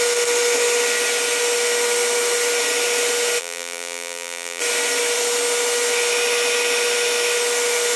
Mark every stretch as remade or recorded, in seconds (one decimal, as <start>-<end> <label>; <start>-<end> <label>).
0.0-3.4 recorded; 3.4-4.6 remade; 4.6-8.0 recorded

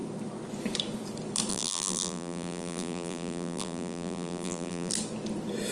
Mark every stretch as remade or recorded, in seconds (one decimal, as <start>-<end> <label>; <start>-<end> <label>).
0.0-1.5 recorded; 1.5-4.9 remade; 4.9-5.7 recorded